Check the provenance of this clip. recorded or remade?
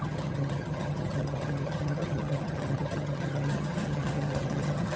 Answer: remade